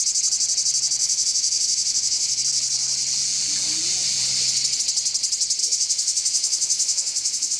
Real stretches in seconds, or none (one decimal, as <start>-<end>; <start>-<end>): 0.0-1.0; 2.4-5.6